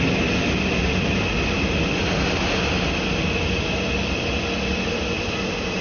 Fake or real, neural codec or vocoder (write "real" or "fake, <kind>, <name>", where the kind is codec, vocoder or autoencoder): real